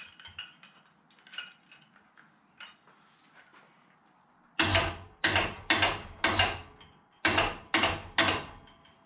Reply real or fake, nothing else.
real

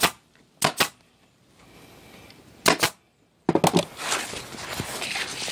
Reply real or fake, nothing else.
real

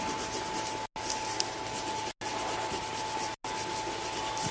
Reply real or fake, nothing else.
real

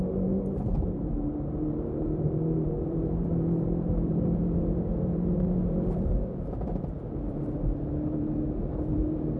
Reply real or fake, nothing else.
fake